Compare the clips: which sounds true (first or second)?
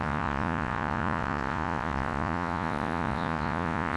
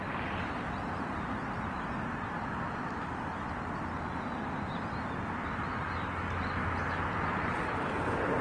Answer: second